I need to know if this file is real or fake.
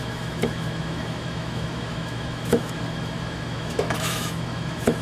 fake